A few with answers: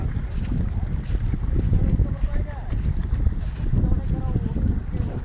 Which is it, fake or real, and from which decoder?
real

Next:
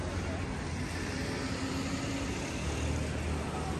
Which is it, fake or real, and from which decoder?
real